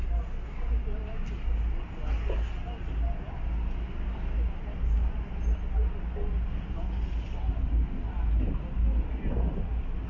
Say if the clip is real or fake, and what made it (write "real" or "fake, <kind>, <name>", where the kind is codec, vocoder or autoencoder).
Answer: real